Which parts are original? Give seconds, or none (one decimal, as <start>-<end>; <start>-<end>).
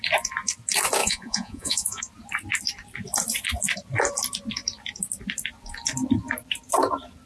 0.0-1.0; 2.0-7.2